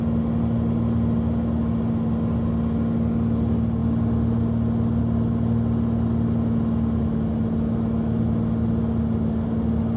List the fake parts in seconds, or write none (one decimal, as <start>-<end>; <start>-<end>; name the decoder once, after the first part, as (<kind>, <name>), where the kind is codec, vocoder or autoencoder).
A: none